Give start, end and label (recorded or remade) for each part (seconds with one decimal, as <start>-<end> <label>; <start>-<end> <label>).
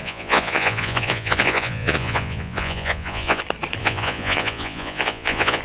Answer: 0.0-3.4 remade; 3.4-3.8 recorded; 3.8-5.6 remade